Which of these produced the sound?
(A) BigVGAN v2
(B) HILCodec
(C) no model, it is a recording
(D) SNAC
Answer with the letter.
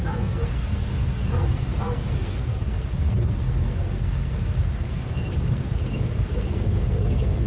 D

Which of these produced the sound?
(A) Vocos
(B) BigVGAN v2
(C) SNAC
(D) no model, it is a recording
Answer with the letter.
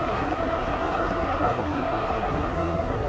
C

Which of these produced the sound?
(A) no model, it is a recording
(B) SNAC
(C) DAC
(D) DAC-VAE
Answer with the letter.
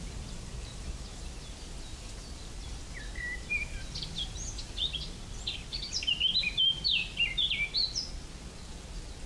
A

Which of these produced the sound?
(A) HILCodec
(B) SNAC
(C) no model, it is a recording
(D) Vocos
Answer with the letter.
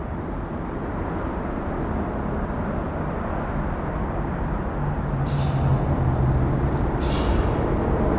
C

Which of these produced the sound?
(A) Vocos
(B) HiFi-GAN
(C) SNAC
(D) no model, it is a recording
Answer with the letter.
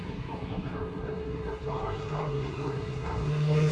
C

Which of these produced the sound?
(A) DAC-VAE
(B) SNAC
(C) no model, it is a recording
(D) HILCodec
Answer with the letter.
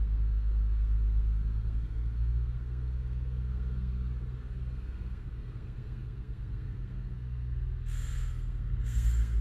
B